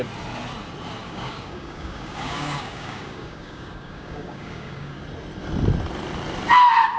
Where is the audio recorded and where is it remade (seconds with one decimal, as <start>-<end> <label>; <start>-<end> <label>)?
0.0-1.0 recorded; 1.0-5.0 remade; 5.0-7.0 recorded